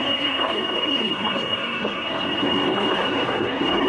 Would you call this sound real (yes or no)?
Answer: no